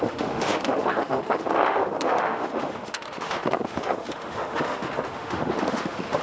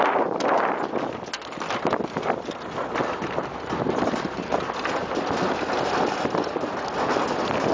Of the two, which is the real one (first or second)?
second